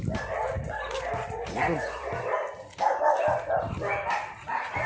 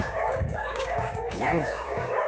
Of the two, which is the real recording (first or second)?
first